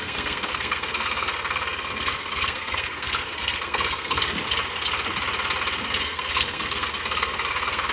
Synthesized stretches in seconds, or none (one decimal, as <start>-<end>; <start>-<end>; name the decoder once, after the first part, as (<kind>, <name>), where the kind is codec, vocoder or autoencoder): 0.0-4.2 (codec, SNAC); 6.0-7.9